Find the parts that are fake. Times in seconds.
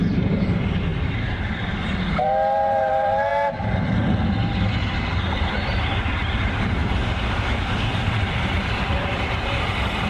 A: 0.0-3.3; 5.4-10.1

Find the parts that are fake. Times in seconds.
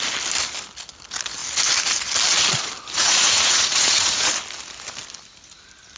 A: 3.0-4.3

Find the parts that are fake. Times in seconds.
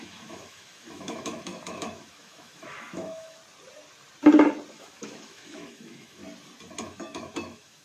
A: 0.0-3.4; 4.7-6.2; 6.8-7.8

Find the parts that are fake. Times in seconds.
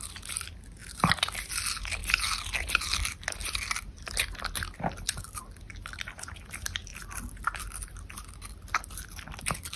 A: 3.4-5.4; 6.9-9.4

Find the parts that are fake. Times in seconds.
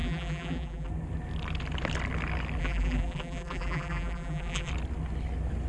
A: 0.0-0.9; 2.6-4.7